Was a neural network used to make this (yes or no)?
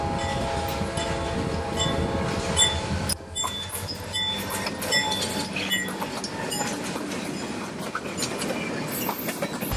no